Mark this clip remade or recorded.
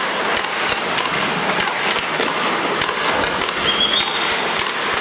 recorded